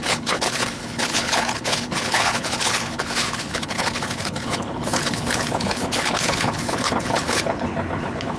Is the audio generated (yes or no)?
yes